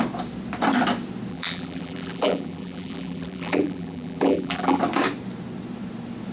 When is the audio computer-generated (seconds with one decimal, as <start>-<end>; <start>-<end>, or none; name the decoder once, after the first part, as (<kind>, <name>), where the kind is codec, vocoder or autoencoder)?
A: 1.3-4.8 (vocoder, BigVGAN v2)